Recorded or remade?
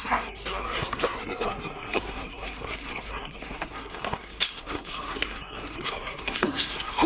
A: remade